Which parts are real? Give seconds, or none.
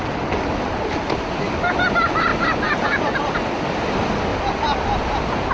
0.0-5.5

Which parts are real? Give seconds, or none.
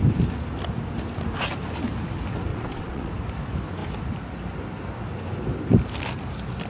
0.0-2.5; 3.1-6.7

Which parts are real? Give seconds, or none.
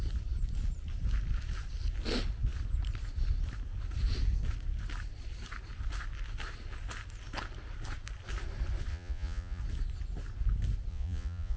0.0-8.9; 9.6-10.9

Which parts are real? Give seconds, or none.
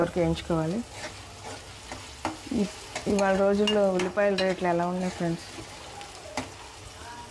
0.0-7.3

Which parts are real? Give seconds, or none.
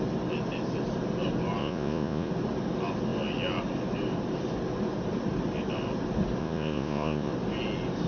0.0-1.6; 2.3-6.4; 7.3-8.1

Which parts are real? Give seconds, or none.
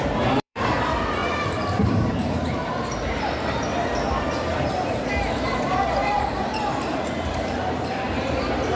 none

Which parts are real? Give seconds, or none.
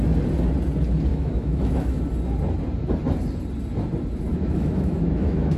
0.0-1.1; 2.0-4.3